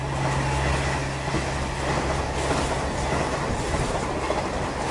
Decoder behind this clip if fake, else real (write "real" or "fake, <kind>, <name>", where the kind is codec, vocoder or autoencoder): real